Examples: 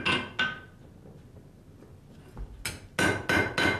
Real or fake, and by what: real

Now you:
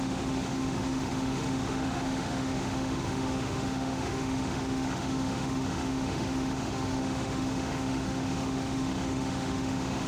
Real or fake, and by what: fake, autoencoder, DAC-VAE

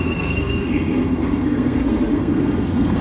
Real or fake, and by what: fake, codec, SNAC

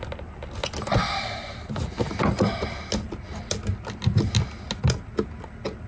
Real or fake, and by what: real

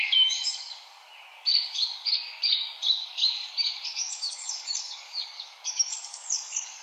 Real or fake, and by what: fake, codec, DAC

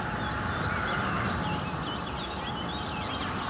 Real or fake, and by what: real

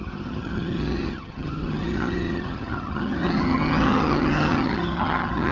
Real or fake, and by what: fake, vocoder, HiFi-GAN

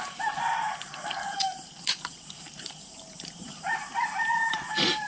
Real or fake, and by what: fake, vocoder, BigVGAN v2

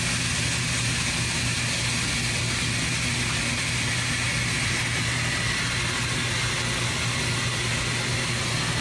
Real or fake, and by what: real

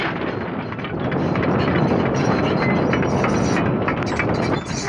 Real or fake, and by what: real